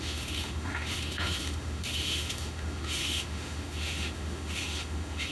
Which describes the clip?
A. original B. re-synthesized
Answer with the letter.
B